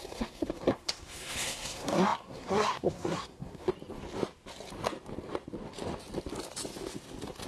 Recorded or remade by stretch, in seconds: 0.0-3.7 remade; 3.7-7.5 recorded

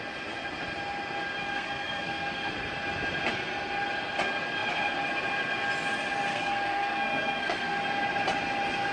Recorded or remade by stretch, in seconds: 0.0-1.4 recorded; 1.4-2.5 remade; 2.5-6.3 recorded; 6.3-7.8 remade; 7.8-8.9 recorded

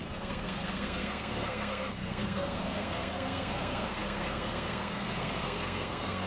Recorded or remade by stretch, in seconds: 0.0-6.3 remade

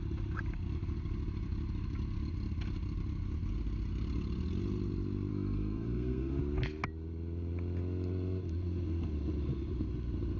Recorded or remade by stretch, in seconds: 0.0-5.3 recorded; 5.3-6.4 remade; 6.4-10.4 recorded

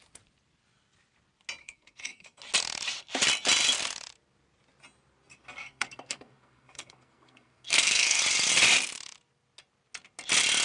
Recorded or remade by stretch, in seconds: 0.0-1.6 recorded; 1.6-2.4 remade; 2.4-5.3 recorded; 5.3-8.2 remade; 8.2-10.6 recorded

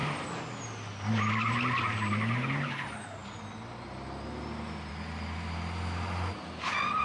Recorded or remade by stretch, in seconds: 0.0-7.0 recorded

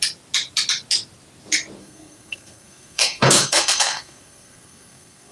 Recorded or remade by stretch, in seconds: 0.0-1.8 recorded; 1.8-5.3 remade

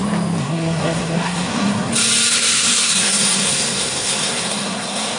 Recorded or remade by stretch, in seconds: 0.0-0.4 recorded; 0.4-1.9 remade; 1.9-2.3 recorded; 2.3-5.2 remade